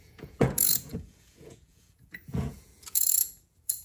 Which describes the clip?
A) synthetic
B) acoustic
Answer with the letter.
A